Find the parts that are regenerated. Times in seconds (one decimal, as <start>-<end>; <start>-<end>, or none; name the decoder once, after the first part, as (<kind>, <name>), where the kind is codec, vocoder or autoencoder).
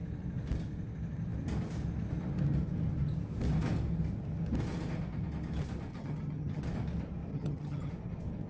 5.9-6.6 (vocoder, HiFi-GAN); 7.3-7.9